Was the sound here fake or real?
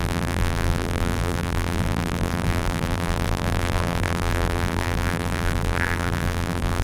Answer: fake